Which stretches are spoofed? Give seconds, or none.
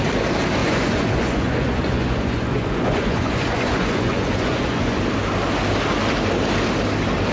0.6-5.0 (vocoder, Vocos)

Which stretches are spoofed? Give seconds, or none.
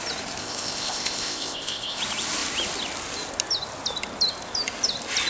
0.4-2.0 (codec, ZipCodec)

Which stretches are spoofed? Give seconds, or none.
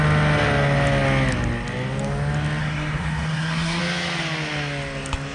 2.6-3.8 (codec, SNAC)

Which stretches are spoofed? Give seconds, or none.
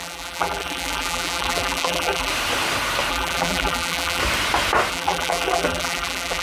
0.0-2.3 (vocoder, BigVGAN v2); 3.1-4.2; 4.9-6.4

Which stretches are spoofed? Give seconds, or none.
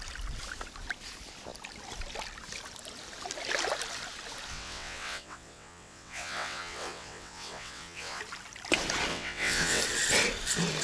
4.5-8.2 (vocoder, WaveNeXt); 9.1-9.8